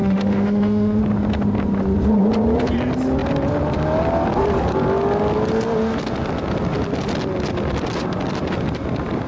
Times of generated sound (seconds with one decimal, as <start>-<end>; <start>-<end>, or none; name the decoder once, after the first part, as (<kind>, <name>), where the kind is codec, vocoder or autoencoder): 0.0-1.0 (autoencoder, DAC-VAE)